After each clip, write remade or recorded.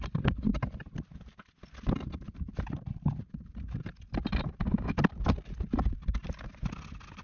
recorded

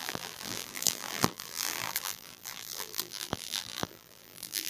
remade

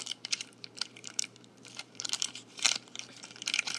remade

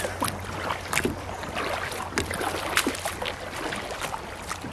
recorded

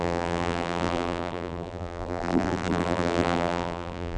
remade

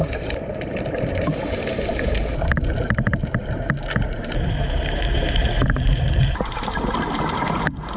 remade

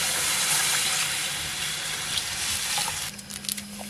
recorded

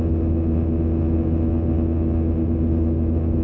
recorded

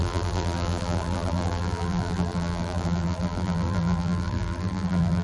remade